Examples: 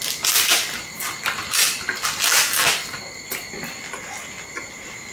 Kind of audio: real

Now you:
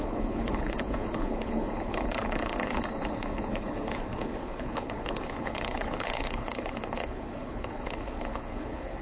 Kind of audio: fake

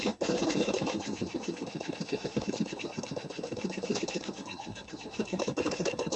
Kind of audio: fake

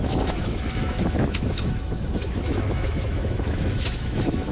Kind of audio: fake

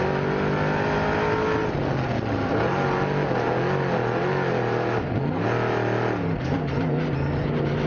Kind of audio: real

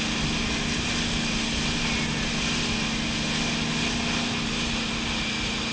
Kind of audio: real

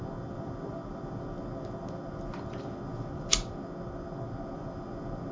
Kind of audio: real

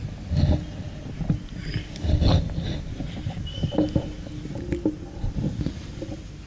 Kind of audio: real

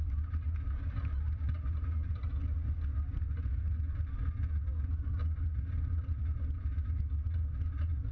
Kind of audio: real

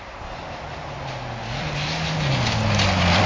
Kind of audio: real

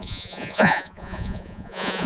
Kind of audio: fake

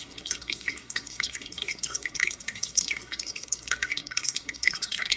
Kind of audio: fake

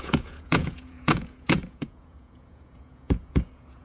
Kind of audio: fake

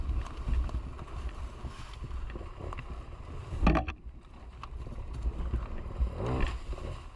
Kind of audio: real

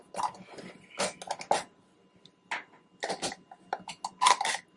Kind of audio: real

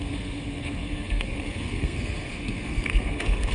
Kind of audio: fake